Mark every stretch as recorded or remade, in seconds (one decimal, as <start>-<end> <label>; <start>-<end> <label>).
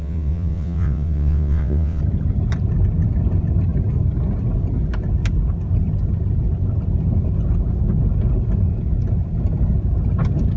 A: 0.0-2.0 remade; 2.0-10.6 recorded